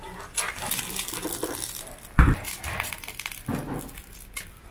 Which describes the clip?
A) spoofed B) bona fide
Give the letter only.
B